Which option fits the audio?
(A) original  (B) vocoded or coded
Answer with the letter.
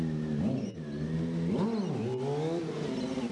A